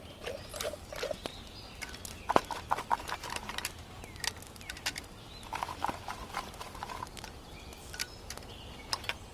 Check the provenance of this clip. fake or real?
real